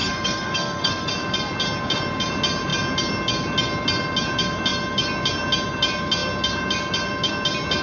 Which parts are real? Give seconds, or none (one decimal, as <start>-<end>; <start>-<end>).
1.1-7.8